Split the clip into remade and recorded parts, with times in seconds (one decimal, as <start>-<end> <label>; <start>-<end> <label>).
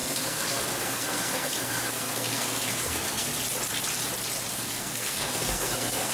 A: 0.0-3.3 remade; 3.3-4.5 recorded; 4.5-6.1 remade